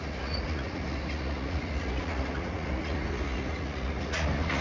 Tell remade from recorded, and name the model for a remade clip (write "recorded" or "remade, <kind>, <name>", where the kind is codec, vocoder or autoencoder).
remade, vocoder, Vocos